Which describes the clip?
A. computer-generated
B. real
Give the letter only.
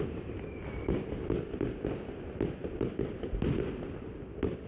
B